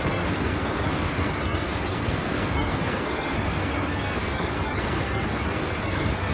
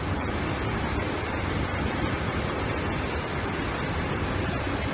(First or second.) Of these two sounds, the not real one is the first